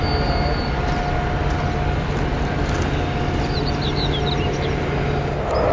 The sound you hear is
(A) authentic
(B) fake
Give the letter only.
A